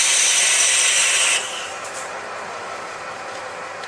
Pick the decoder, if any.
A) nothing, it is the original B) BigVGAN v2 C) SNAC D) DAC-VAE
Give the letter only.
B